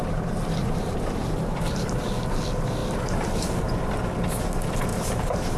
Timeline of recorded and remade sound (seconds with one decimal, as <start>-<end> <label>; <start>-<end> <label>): 0.0-0.6 recorded; 0.6-2.0 remade; 2.0-4.9 recorded; 4.9-5.6 remade